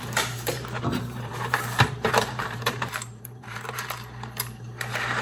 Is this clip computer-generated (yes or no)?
yes